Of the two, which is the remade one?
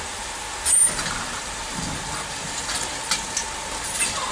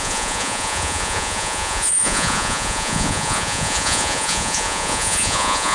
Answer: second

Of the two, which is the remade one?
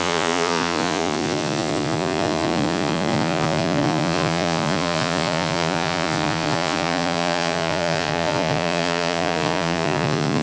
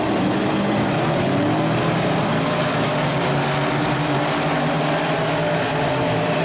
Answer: first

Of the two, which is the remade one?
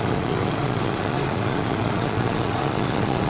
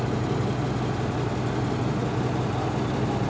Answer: first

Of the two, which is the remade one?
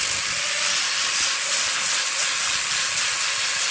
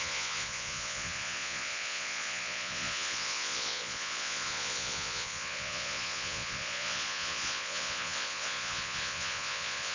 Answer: second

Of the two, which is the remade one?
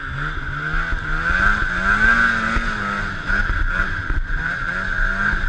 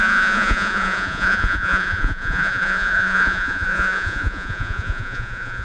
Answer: second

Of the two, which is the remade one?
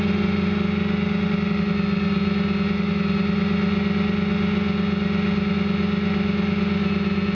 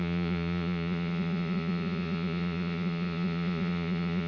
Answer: second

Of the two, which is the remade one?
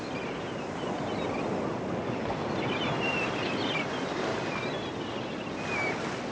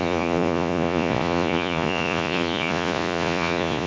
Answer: second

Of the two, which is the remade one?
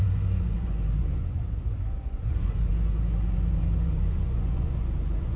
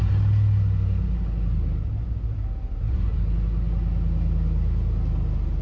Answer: first